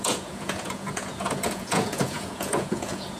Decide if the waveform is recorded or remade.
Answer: remade